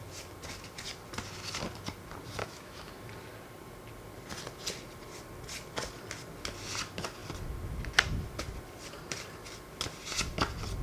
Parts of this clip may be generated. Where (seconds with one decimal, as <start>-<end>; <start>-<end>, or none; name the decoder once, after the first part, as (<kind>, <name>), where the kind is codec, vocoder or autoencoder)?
2.4-2.9 (autoencoder, DAC-VAE)